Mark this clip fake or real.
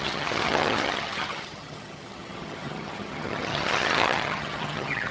fake